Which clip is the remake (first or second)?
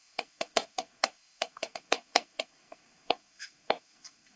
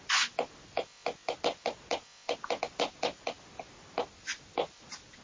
first